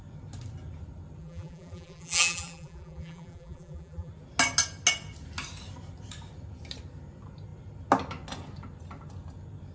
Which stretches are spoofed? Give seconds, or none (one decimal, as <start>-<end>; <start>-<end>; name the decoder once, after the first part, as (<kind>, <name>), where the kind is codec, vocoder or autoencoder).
1.2-4.1 (vocoder, BigVGAN v2)